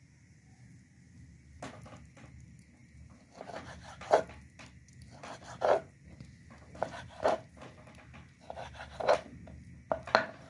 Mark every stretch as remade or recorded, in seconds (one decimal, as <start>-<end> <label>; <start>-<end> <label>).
0.0-10.5 recorded